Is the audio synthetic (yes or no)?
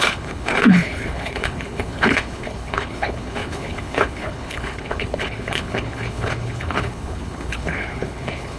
yes